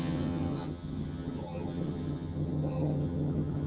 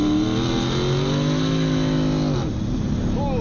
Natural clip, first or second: second